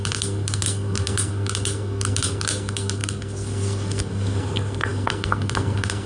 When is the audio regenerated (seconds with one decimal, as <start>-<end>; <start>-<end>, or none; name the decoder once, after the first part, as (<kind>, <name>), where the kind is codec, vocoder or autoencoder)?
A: 0.0-6.1 (codec, SNAC)